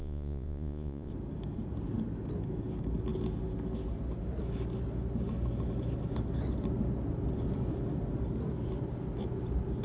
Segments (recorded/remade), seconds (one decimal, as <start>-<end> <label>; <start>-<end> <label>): 0.0-1.1 remade; 1.1-9.8 recorded

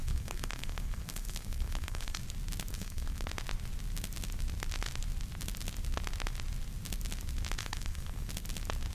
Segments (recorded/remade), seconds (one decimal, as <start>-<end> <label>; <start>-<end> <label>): 0.0-2.2 remade; 2.2-2.7 recorded; 2.7-3.3 remade; 3.3-7.6 recorded; 7.6-8.3 remade; 8.3-8.9 recorded

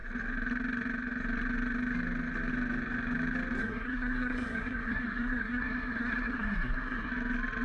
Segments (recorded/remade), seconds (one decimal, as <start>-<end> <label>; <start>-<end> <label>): 0.0-3.6 recorded; 3.6-7.1 remade; 7.1-7.6 recorded

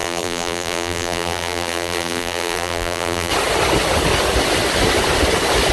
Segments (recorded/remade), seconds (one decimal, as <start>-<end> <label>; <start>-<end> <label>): 0.0-3.3 remade; 3.3-5.7 recorded

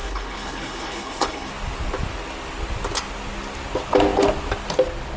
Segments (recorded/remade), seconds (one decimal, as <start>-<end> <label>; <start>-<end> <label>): 0.0-1.5 remade; 1.5-5.2 recorded

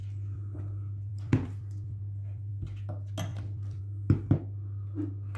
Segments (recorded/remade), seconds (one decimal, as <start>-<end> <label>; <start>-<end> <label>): 0.0-0.6 remade; 0.6-1.1 recorded; 1.1-2.5 remade; 2.5-3.3 recorded; 3.3-3.8 remade; 3.8-5.4 recorded

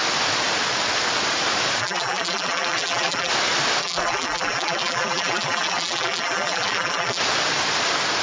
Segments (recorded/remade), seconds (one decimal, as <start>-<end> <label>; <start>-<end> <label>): 0.0-1.8 recorded; 1.8-3.3 remade; 3.3-3.8 recorded; 3.8-7.2 remade; 7.2-8.2 recorded

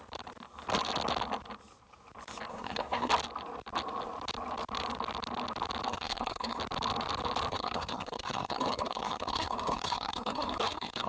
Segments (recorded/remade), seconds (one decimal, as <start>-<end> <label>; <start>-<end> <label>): 0.0-2.5 recorded; 2.5-3.1 remade; 3.1-5.9 recorded; 5.9-6.6 remade; 6.6-7.5 recorded; 7.5-11.1 remade